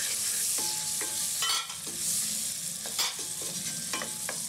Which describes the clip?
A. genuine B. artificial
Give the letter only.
A